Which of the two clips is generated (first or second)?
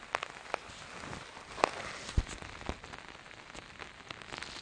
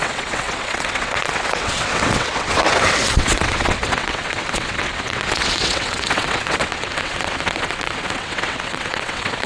second